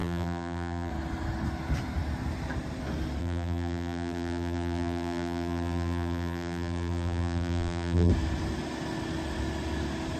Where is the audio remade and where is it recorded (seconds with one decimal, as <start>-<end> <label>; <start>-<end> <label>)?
0.0-0.9 remade; 0.9-3.2 recorded; 3.2-8.1 remade; 8.1-10.2 recorded